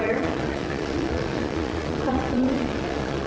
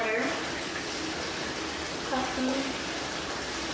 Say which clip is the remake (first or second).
first